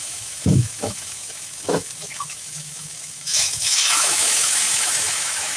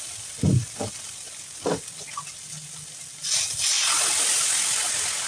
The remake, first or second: first